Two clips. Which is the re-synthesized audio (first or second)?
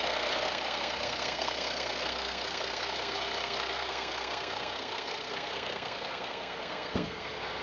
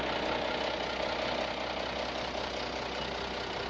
first